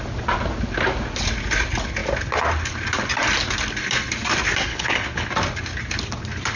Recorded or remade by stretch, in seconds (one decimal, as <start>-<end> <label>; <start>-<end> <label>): 0.0-4.7 recorded; 4.7-5.3 remade; 5.3-6.6 recorded